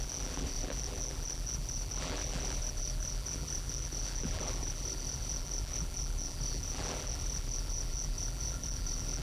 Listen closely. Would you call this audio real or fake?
fake